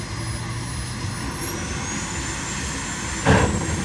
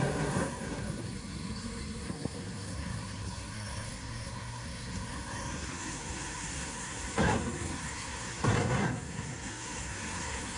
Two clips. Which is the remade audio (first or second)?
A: second